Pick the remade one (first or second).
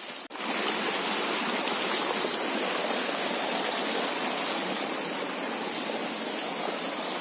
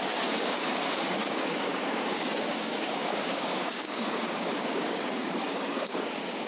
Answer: second